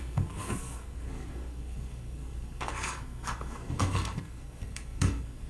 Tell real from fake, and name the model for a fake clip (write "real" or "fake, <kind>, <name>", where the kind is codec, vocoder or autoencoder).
fake, codec, SNAC